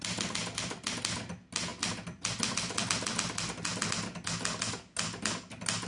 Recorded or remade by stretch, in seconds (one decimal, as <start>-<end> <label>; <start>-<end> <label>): 0.0-5.9 recorded